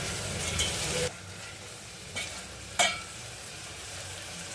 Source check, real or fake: fake